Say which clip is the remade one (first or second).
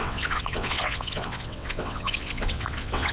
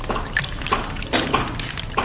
first